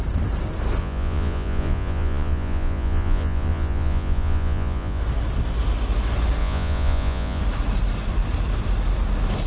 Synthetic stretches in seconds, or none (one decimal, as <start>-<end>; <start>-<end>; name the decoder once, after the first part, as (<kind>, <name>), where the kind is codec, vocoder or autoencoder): 0.8-5.0 (vocoder, Vocos); 6.4-7.4